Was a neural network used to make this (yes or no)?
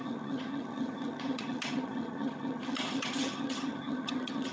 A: yes